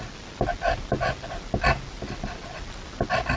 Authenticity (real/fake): real